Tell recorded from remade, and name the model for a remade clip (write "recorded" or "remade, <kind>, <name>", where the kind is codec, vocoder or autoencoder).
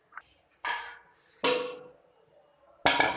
recorded